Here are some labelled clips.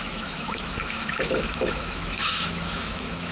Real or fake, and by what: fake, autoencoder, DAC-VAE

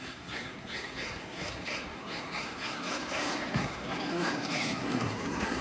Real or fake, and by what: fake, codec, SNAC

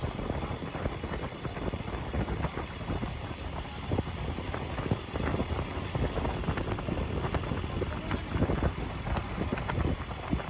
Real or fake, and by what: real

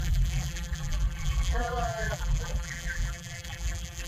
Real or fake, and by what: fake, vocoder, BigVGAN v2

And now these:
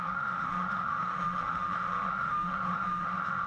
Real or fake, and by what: fake, autoencoder, DAC-VAE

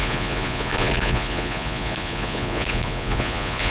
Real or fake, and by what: fake, vocoder, Vocos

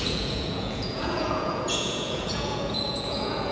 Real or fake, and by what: fake, vocoder, Vocos